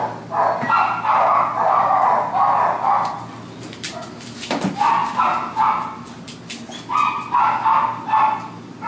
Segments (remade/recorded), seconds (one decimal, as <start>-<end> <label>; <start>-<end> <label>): 0.0-8.9 recorded

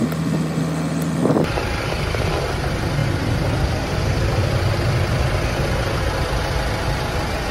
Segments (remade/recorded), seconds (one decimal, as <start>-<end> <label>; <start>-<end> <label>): 0.0-7.5 recorded

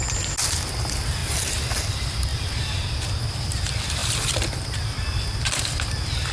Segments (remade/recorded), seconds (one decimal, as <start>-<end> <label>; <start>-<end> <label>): 0.0-2.3 recorded; 2.3-2.9 remade; 2.9-6.3 recorded

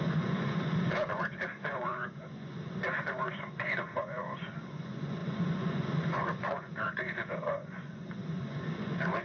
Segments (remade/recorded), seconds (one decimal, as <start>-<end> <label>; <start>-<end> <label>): 0.0-9.2 remade

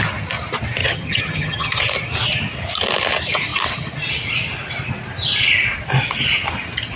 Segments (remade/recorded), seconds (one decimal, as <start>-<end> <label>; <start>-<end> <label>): 0.0-0.8 recorded; 0.8-1.8 remade; 1.8-7.0 recorded

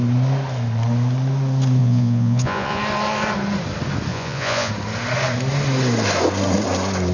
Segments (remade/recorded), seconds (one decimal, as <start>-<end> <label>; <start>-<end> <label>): 0.0-1.8 recorded; 1.8-2.8 remade; 2.8-4.1 recorded; 4.1-4.7 remade; 4.7-7.1 recorded